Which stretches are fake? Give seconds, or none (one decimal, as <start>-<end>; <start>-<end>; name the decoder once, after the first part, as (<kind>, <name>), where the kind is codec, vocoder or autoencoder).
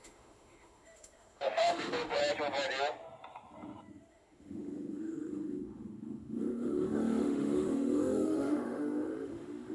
0.0-2.2 (autoencoder, DAC-VAE); 4.1-9.7